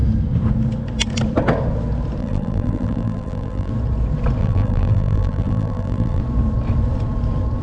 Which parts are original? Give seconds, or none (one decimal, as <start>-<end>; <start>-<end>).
0.0-2.2; 3.7-4.4; 6.2-7.6